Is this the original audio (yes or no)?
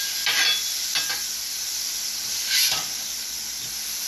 yes